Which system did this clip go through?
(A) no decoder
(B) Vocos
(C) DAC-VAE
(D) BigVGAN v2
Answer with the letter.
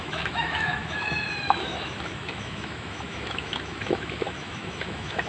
C